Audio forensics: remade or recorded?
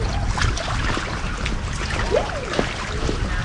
recorded